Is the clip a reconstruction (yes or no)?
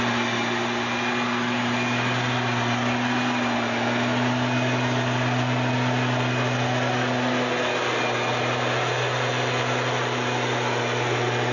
no